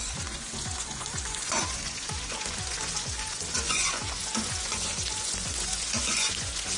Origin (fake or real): fake